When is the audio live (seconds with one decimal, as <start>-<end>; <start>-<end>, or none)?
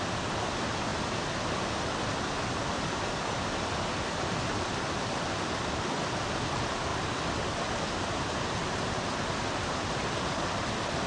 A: 0.0-11.1